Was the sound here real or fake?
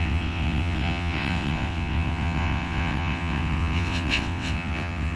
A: fake